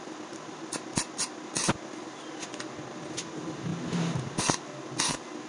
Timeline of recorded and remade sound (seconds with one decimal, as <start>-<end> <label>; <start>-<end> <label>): 0.0-5.5 recorded